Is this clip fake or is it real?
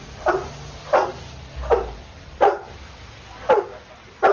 real